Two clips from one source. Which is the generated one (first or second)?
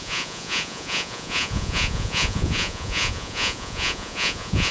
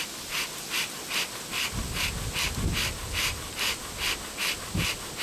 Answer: first